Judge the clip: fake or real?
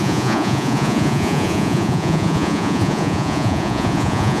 fake